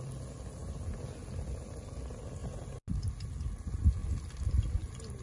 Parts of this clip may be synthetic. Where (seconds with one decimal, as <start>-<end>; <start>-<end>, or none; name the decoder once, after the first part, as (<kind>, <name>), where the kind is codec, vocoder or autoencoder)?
none